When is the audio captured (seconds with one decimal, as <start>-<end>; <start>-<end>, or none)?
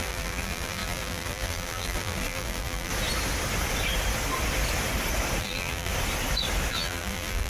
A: 2.9-5.4; 5.9-6.7